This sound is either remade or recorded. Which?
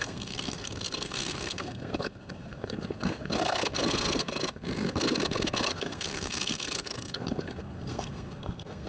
remade